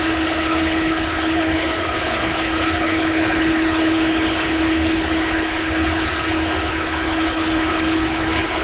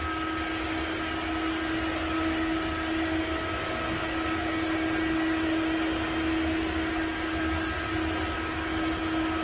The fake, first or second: first